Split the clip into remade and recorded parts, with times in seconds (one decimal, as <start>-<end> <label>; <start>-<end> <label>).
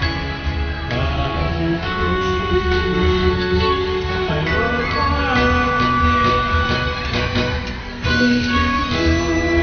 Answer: 0.0-1.1 recorded; 1.1-4.3 remade; 4.3-7.8 recorded; 7.8-8.8 remade; 8.8-9.6 recorded